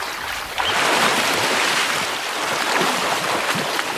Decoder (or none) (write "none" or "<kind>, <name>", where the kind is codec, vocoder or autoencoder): none